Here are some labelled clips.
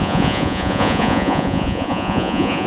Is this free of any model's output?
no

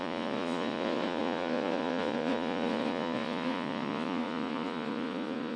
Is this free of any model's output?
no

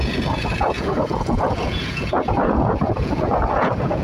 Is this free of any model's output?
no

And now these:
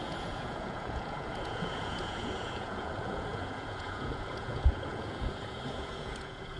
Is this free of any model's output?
no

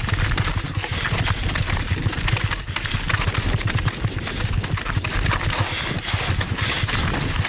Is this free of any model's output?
yes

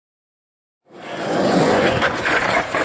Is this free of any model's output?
no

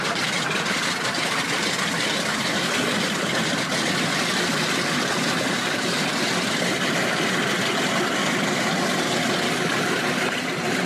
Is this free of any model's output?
yes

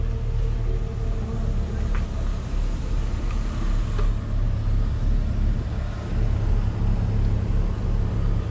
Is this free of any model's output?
yes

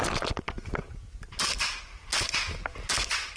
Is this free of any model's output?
yes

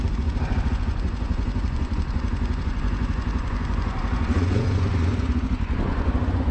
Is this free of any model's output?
no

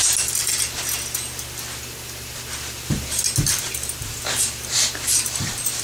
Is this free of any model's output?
yes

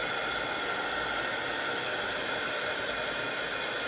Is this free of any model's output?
yes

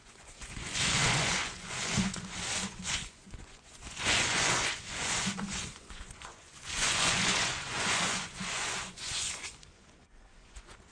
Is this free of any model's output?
no